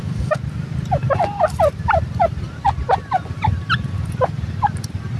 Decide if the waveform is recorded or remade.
recorded